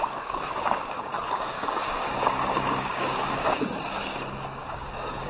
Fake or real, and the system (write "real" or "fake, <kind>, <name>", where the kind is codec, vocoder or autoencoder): fake, codec, DAC